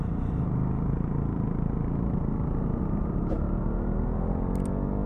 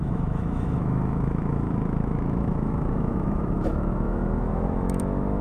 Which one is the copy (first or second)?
second